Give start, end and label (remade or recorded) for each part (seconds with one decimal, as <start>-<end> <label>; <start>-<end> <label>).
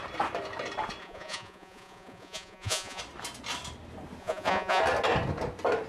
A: 0.0-1.0 recorded; 1.0-3.0 remade; 3.0-4.2 recorded; 4.2-4.8 remade; 4.8-5.9 recorded